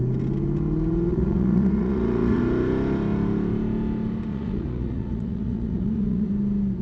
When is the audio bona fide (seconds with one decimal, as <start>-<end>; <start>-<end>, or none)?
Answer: 0.0-1.1; 2.4-4.3; 6.3-6.8

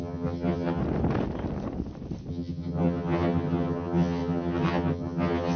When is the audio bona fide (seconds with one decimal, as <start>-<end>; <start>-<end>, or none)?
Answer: 0.8-2.3

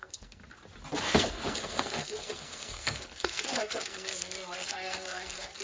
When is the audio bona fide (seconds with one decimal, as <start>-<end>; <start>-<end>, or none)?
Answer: 0.4-1.0

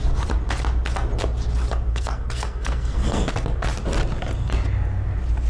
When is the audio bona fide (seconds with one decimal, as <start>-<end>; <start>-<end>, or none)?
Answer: 0.0-1.9; 3.2-5.5

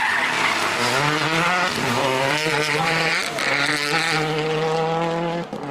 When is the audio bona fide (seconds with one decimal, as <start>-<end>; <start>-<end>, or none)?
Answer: 0.0-2.0; 3.7-5.7

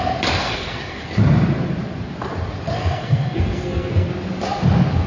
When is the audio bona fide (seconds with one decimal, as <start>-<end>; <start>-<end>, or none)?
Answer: 0.0-0.4; 1.1-2.8; 4.1-5.1